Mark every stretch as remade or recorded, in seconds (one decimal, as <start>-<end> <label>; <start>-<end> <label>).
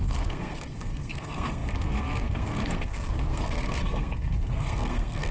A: 0.0-5.3 remade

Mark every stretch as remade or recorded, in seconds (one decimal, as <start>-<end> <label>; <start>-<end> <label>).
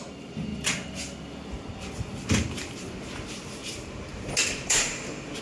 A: 0.0-5.4 recorded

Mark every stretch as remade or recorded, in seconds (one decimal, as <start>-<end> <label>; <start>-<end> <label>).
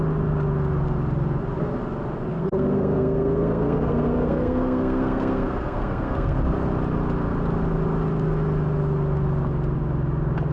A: 0.0-2.3 recorded; 2.3-6.4 remade; 6.4-10.5 recorded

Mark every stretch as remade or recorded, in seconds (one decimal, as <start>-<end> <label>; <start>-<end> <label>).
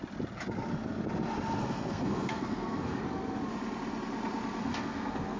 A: 0.0-1.6 recorded; 1.6-3.0 remade; 3.0-4.6 recorded; 4.6-5.4 remade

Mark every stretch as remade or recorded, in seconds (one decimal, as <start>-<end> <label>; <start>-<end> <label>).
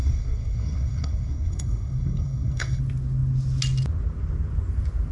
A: 0.0-2.8 remade; 2.8-5.1 recorded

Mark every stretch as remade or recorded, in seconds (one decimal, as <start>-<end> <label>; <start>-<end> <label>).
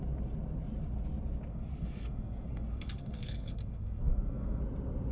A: 0.0-1.5 recorded; 1.5-4.6 remade; 4.6-5.1 recorded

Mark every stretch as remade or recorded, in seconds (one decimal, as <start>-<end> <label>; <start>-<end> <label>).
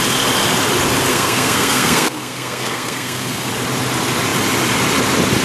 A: 0.0-1.1 recorded; 1.1-3.5 remade; 3.5-5.4 recorded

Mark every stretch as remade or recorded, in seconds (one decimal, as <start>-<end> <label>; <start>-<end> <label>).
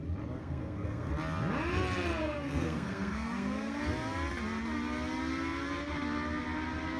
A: 0.0-0.4 recorded; 0.4-1.1 remade; 1.1-2.2 recorded; 2.2-3.8 remade; 3.8-7.0 recorded